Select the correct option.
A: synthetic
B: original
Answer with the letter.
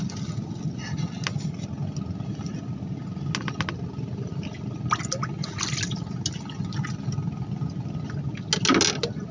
B